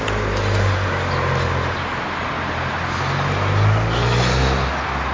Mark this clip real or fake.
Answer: real